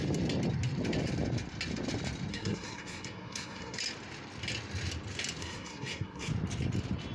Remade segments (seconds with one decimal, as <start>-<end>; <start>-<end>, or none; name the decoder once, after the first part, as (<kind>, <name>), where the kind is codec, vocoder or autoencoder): 2.3-3.8 (codec, SNAC); 5.4-6.3